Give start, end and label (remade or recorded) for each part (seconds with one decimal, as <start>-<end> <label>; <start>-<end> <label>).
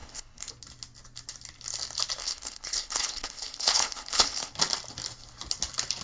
0.0-0.5 remade; 0.5-2.2 recorded; 2.2-4.5 remade; 4.5-6.0 recorded